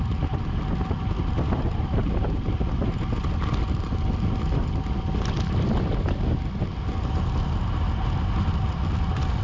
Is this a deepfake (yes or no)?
no